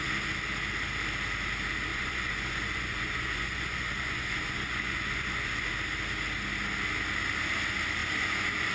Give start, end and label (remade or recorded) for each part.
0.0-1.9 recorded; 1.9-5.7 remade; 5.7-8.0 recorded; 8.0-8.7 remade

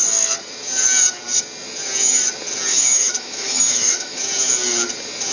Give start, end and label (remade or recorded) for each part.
0.0-2.7 recorded; 2.7-4.2 remade; 4.2-5.3 recorded

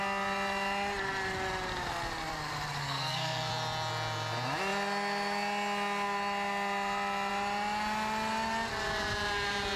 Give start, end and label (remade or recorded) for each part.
0.0-2.8 recorded; 2.8-3.5 remade; 3.5-9.8 recorded